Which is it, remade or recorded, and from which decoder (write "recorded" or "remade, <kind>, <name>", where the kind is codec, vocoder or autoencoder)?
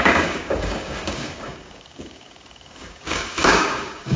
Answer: remade, codec, DAC